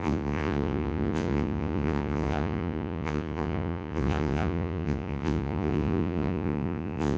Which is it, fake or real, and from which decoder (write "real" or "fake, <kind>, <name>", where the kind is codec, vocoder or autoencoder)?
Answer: fake, vocoder, Vocos